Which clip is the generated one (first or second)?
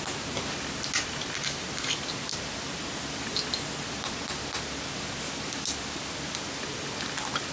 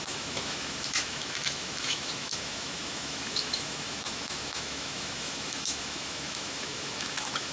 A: second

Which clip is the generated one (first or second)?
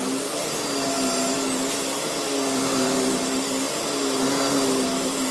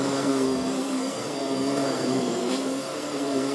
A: second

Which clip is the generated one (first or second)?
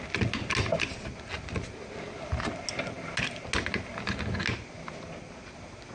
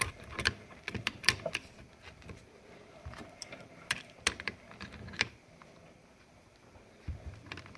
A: second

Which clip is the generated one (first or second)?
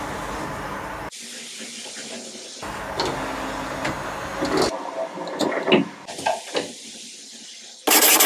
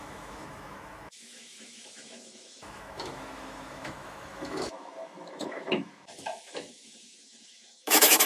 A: second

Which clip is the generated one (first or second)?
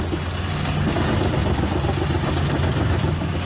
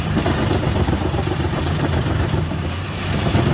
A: second